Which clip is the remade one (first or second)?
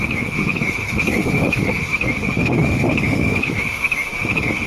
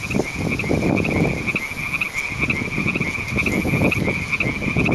first